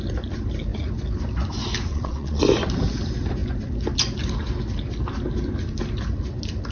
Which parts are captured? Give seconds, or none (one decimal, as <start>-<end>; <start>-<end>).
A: 0.0-1.9; 2.4-6.7